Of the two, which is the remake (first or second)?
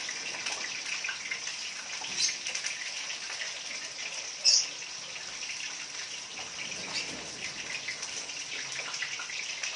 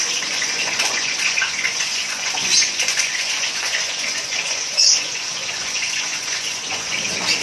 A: second